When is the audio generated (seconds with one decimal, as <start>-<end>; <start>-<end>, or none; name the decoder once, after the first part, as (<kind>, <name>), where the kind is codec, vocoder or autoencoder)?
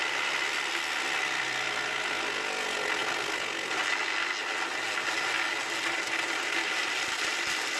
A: none